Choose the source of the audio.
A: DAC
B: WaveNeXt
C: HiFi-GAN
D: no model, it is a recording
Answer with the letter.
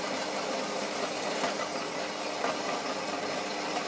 D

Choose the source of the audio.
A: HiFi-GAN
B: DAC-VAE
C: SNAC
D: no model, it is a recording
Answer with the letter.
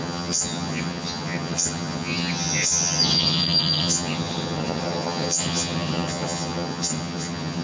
A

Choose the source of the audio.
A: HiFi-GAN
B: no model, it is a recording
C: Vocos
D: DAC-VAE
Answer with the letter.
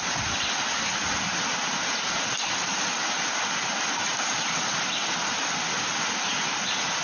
B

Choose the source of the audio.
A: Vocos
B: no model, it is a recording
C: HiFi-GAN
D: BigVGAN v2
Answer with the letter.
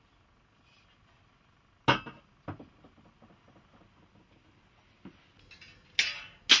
B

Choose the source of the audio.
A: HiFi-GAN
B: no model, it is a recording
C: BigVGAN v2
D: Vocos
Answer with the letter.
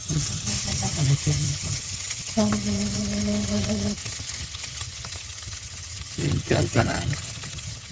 A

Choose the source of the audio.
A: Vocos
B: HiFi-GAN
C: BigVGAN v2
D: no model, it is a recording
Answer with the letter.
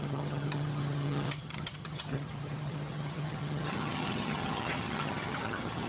B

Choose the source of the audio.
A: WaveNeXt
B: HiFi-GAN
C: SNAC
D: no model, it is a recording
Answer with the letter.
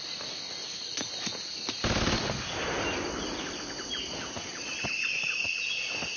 D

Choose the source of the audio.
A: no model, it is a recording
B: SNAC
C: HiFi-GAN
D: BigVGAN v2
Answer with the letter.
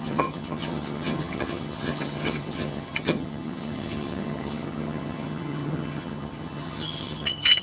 C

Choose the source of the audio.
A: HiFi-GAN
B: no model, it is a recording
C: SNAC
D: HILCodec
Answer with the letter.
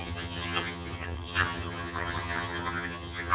A